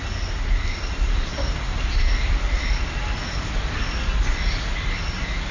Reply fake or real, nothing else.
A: real